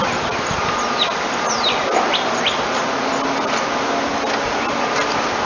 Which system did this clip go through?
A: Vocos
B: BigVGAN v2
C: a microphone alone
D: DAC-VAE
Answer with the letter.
C